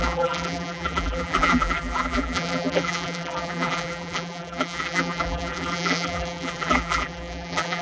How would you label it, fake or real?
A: fake